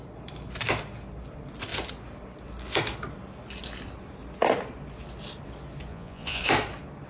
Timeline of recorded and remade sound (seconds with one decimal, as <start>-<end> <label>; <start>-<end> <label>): 0.0-5.9 recorded; 5.9-6.4 remade; 6.4-7.1 recorded